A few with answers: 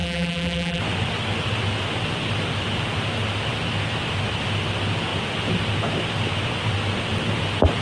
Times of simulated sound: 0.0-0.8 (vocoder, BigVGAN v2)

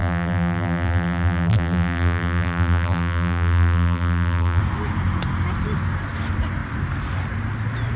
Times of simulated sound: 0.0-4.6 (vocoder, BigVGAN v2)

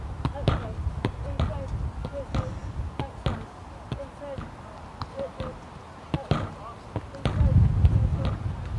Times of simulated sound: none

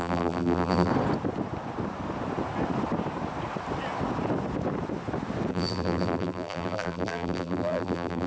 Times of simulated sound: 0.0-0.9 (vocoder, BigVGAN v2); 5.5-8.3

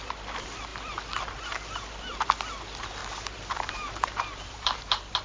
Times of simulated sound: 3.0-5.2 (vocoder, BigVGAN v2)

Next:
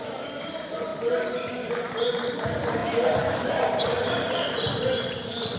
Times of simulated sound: 0.0-5.6 (vocoder, BigVGAN v2)